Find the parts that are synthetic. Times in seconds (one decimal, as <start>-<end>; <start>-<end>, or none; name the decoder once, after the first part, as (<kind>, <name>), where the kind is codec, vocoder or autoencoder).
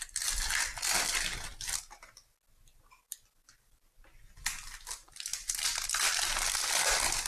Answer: 0.0-1.5 (vocoder, BigVGAN v2); 3.0-7.3